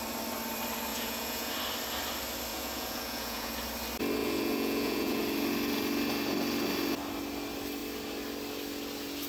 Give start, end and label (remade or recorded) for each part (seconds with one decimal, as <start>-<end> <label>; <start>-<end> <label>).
0.0-0.9 recorded; 0.9-1.5 remade; 1.5-2.5 recorded; 2.5-3.5 remade; 3.5-4.2 recorded; 4.2-5.2 remade; 5.2-9.3 recorded

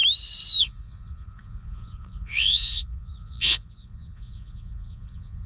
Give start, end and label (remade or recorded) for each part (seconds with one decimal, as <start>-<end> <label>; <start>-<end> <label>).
0.0-0.6 recorded; 0.6-5.5 remade

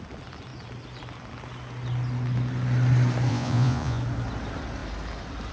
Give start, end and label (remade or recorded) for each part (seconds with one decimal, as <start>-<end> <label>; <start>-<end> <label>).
0.0-3.3 recorded; 3.3-4.0 remade; 4.0-5.5 recorded